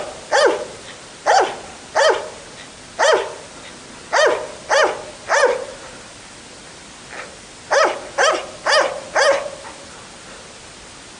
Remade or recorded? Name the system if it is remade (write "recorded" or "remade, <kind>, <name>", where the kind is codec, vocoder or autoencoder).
recorded